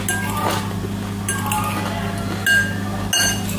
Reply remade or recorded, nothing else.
recorded